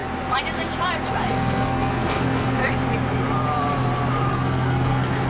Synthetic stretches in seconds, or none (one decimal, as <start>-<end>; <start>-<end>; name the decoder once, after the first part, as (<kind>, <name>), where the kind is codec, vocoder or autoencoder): 1.3-2.6 (codec, SNAC); 4.3-5.3